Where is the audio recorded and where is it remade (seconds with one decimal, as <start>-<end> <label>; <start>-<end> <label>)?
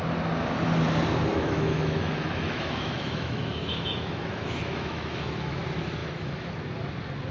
0.0-1.3 recorded; 1.3-5.6 remade; 5.6-6.0 recorded; 6.0-6.5 remade; 6.5-7.3 recorded